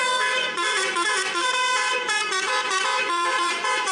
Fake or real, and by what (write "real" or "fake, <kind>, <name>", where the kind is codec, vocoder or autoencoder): fake, vocoder, Vocos